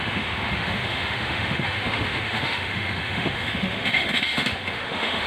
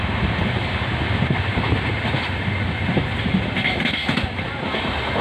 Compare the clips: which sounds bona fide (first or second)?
second